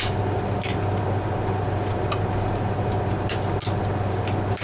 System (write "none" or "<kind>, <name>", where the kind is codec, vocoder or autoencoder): none